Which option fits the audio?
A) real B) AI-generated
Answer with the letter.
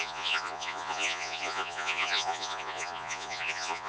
B